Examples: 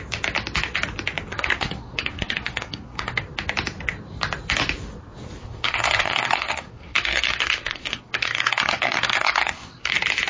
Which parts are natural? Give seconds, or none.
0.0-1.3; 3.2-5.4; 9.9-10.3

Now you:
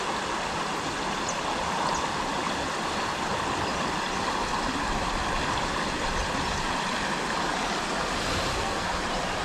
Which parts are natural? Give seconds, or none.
0.0-8.5; 9.0-9.4

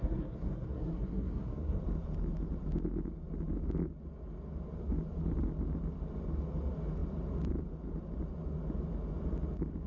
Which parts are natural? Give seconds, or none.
1.8-9.9

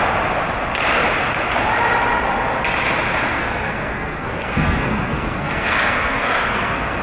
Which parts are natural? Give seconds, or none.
0.0-3.3

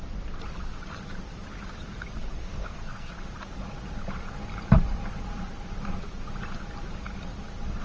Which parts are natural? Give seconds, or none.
0.0-2.4; 3.1-7.8

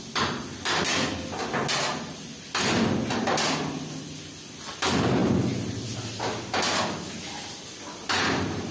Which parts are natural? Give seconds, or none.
0.0-8.7